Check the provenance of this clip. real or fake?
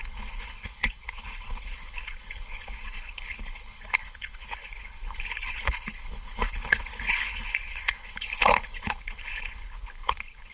fake